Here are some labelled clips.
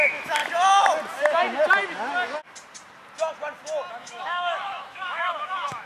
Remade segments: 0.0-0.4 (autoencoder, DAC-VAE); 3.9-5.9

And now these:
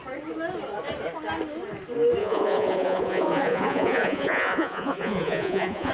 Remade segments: 2.2-5.9 (vocoder, Vocos)

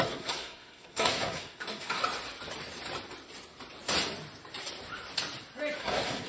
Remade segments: 0.0-2.0 (codec, SNAC); 5.8-6.3

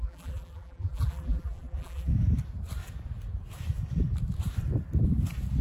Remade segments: 0.0-2.1 (vocoder, BigVGAN v2)

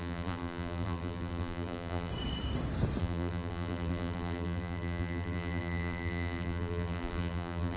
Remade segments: 0.0-2.1 (vocoder, BigVGAN v2); 3.0-7.8